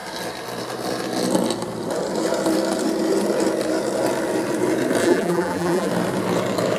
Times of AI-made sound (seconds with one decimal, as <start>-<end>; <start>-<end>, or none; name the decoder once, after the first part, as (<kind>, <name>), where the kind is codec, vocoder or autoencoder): 5.0-5.9 (vocoder, BigVGAN v2)